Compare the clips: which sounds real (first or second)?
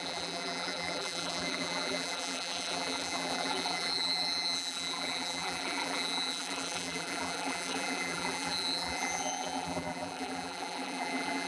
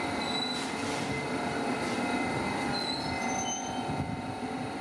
second